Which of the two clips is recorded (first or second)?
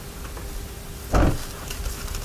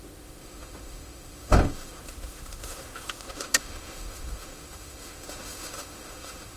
first